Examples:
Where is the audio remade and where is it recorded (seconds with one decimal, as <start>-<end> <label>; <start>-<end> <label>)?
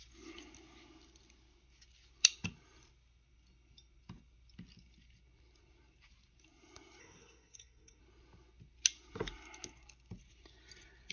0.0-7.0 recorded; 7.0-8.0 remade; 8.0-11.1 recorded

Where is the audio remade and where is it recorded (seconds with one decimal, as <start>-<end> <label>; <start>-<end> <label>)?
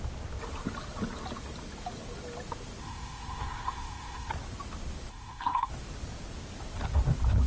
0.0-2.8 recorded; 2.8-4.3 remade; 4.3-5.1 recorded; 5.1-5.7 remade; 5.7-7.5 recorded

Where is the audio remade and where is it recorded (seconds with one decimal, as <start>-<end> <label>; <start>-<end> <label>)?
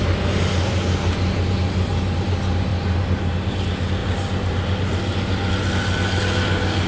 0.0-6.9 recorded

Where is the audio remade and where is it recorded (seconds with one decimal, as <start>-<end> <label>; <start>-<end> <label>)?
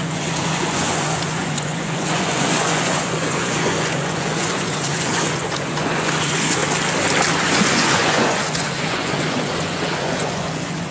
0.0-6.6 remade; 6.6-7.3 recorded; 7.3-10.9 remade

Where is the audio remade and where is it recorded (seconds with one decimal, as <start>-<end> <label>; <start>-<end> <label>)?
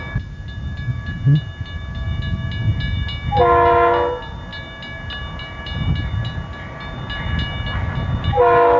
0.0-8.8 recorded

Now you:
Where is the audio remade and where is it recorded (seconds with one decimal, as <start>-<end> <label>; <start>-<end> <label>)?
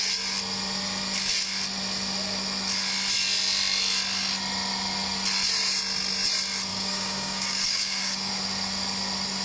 0.0-6.7 recorded; 6.7-8.3 remade; 8.3-9.4 recorded